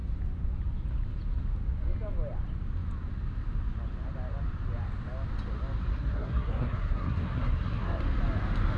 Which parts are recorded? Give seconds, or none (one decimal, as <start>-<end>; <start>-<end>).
0.0-5.9; 8.0-8.8